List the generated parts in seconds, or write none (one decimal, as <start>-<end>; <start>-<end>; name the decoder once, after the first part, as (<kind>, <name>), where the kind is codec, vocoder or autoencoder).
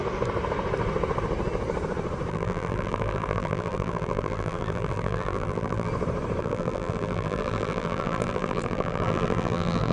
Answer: 2.3-5.9 (vocoder, BigVGAN v2); 6.4-9.9